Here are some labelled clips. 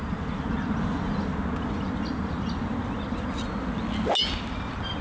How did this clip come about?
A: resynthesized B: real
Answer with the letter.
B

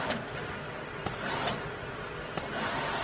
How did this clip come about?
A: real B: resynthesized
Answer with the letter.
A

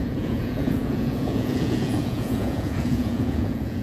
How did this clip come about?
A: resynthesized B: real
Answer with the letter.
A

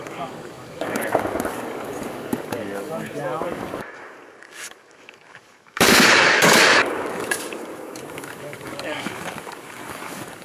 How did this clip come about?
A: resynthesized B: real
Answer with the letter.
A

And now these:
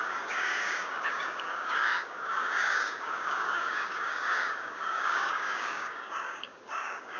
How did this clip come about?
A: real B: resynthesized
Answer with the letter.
B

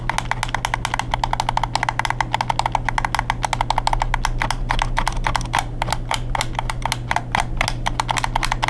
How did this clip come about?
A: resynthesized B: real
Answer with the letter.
B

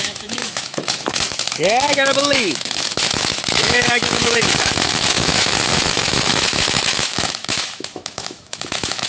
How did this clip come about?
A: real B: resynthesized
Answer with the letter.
B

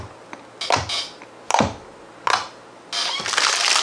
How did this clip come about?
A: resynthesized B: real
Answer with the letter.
B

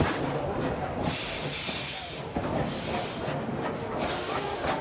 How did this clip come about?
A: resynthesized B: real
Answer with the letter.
B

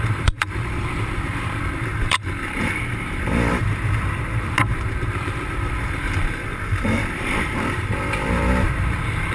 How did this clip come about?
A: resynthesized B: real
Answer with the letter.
A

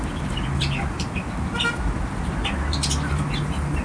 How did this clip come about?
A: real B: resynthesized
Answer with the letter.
A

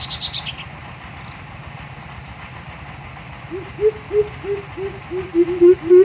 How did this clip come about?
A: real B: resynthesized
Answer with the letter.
A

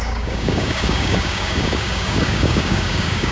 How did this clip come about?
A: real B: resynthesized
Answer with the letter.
B